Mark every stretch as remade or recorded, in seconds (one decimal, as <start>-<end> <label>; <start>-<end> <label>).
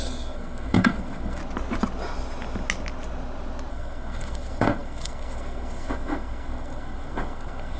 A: 0.0-1.4 remade; 1.4-3.7 recorded; 3.7-7.8 remade